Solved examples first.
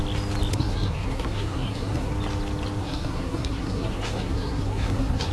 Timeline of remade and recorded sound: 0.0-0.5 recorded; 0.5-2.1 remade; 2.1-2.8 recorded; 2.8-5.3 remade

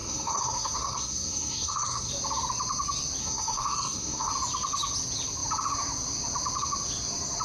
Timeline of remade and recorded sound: 0.0-2.1 remade; 2.1-3.2 recorded; 3.2-4.3 remade; 4.3-7.4 recorded

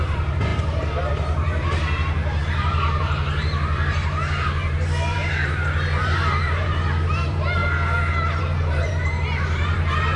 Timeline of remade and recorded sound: 0.0-7.6 remade; 7.6-8.4 recorded; 8.4-10.2 remade

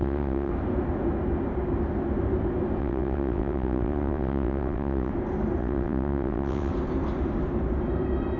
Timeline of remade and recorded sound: 0.0-0.5 remade; 0.5-2.8 recorded; 2.8-5.1 remade; 5.1-5.6 recorded; 5.6-6.7 remade; 6.7-8.4 recorded

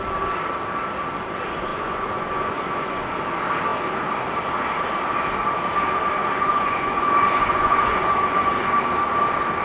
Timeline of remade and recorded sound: 0.0-1.7 recorded; 1.7-3.0 remade; 3.0-6.2 recorded; 6.2-8.7 remade; 8.7-9.6 recorded

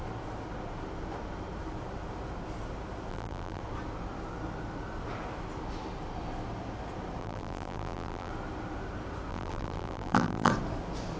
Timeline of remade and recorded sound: 0.0-3.1 recorded; 3.1-3.6 remade; 3.6-7.2 recorded; 7.2-8.3 remade; 8.3-9.3 recorded; 9.3-10.5 remade; 10.5-11.2 recorded